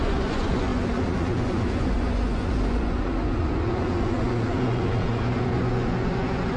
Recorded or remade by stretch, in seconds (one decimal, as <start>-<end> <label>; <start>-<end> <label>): 0.0-6.6 remade